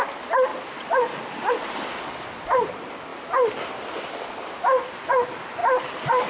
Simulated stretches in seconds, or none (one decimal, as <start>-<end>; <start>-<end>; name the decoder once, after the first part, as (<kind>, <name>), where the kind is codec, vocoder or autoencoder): none